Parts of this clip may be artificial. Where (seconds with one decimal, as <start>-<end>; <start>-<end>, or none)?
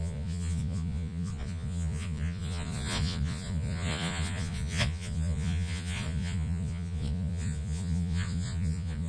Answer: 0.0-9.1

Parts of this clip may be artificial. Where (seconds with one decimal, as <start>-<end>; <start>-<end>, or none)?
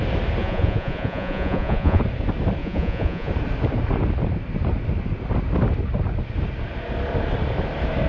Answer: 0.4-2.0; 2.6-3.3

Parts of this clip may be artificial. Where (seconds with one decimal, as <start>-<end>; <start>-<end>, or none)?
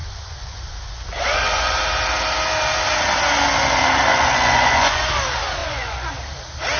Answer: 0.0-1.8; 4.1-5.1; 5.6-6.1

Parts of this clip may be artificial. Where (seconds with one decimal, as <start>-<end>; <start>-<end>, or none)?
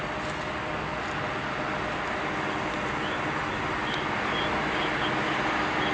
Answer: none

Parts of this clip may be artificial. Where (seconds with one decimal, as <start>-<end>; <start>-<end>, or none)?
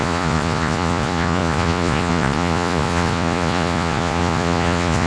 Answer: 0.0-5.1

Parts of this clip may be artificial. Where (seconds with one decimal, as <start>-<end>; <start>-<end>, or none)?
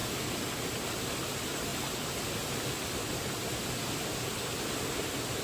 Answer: none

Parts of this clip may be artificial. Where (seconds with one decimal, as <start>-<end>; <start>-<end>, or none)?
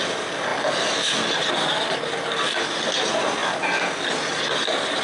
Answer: none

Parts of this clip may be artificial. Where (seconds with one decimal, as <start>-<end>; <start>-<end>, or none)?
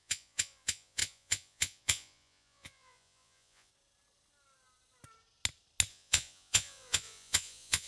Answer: 0.0-3.7; 5.9-7.9